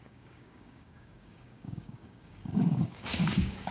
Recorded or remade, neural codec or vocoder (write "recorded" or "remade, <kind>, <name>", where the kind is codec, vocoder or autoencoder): remade, codec, DAC